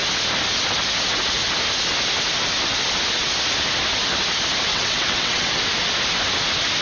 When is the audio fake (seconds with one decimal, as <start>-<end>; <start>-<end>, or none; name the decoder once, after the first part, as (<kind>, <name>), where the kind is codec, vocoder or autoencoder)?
4.7-5.6 (vocoder, WaveNeXt)